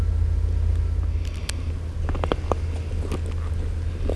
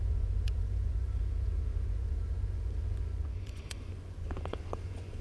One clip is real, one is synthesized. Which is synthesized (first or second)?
second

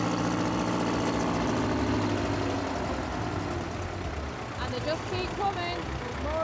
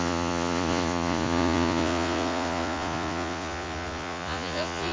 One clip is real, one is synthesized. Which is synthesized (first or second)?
second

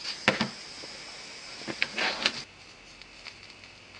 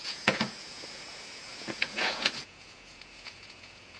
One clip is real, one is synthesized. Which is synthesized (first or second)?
second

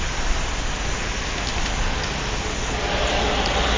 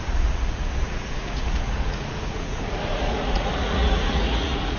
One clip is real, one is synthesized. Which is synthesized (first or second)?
second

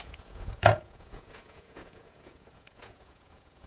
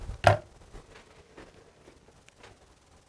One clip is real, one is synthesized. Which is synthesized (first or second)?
first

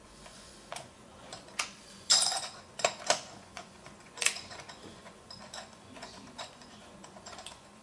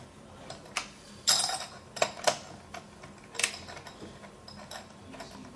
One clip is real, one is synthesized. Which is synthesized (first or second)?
first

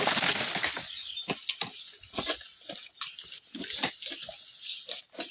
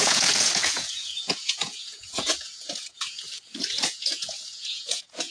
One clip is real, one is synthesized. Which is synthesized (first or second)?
second